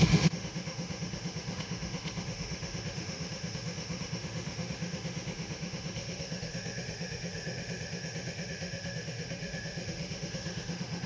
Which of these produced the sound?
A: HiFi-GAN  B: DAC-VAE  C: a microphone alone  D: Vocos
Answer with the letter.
B